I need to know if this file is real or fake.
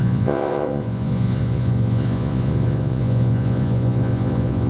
fake